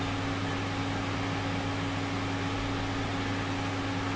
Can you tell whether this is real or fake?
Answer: real